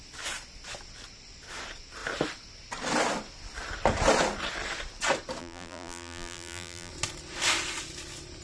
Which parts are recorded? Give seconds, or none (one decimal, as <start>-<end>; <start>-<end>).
0.0-5.4; 6.9-8.4